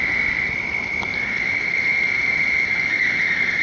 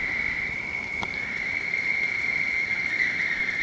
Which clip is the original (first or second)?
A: first